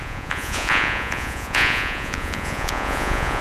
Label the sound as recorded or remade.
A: remade